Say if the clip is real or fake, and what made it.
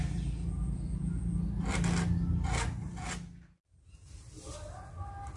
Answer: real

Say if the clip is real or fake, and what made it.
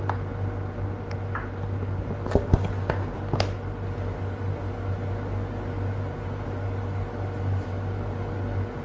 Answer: real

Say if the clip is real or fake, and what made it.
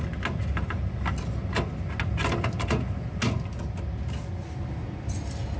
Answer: real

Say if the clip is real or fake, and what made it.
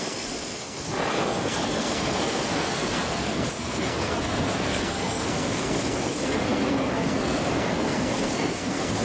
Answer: fake, codec, SNAC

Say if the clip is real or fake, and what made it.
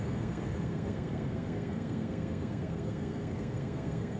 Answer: fake, codec, SNAC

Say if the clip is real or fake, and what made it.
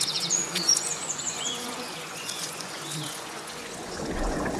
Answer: fake, vocoder, Vocos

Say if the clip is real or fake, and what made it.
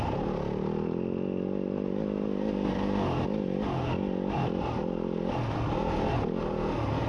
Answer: real